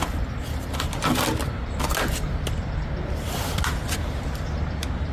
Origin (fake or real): real